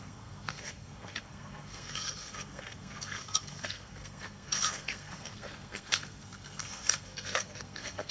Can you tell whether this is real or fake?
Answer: fake